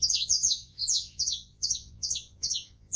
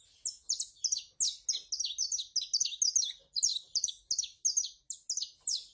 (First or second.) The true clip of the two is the second